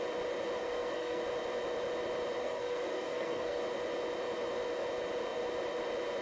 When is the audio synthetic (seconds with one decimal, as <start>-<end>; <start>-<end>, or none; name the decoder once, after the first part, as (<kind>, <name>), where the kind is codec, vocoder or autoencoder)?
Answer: 0.6-1.2 (codec, SNAC); 2.4-3.6